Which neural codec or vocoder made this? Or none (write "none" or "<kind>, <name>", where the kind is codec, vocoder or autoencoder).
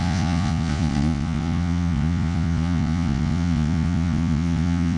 vocoder, Vocos